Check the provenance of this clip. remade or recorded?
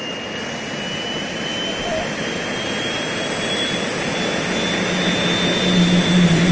recorded